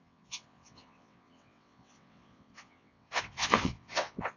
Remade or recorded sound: remade